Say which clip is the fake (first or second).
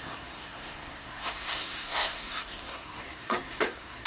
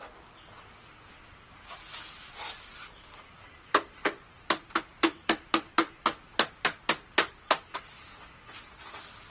first